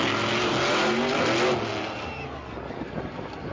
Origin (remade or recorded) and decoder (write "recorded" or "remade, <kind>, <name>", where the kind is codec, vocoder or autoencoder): recorded